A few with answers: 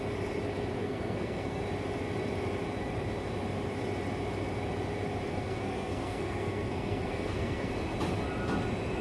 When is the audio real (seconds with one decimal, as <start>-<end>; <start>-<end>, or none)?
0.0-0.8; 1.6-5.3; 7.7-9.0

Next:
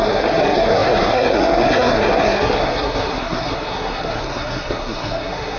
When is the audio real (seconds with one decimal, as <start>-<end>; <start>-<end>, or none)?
none

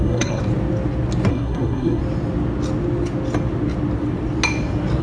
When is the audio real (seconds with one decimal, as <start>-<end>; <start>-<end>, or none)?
0.4-1.3; 2.0-5.0

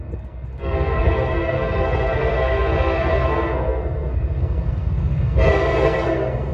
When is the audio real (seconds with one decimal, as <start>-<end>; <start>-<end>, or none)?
none

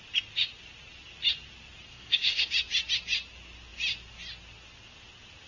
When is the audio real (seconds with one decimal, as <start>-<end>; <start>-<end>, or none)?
0.0-1.9; 2.5-5.5

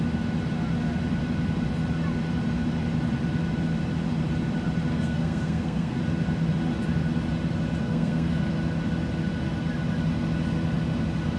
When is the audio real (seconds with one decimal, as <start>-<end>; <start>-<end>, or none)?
0.0-4.9; 6.0-7.8; 8.3-11.4

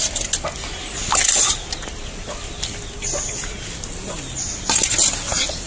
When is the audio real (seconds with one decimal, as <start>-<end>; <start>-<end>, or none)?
0.0-5.7